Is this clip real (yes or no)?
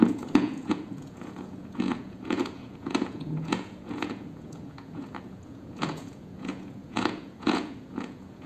no